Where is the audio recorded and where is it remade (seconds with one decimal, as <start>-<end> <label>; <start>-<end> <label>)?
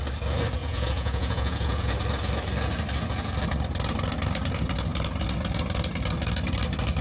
0.0-0.6 recorded; 0.6-1.9 remade; 1.9-7.0 recorded